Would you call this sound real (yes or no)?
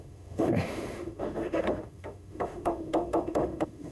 no